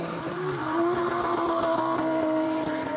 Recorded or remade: remade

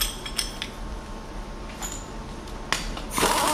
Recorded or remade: recorded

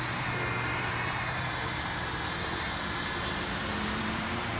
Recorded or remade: remade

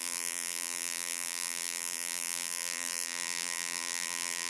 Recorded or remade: remade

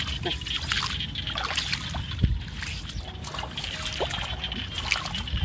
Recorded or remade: recorded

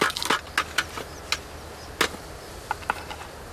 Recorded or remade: recorded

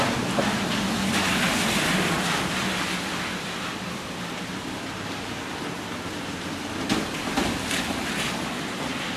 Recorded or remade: recorded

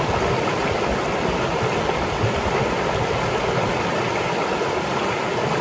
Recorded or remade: recorded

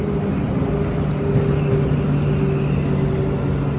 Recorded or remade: recorded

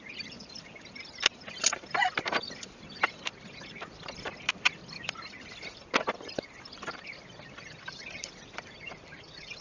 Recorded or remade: remade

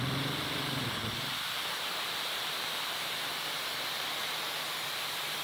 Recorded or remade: remade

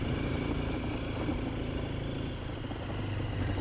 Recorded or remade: recorded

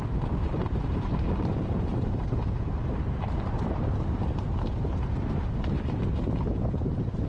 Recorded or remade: remade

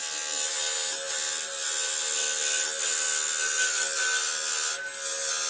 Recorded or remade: recorded